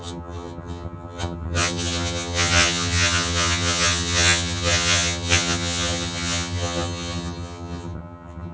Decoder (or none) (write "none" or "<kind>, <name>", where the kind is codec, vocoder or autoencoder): vocoder, HiFi-GAN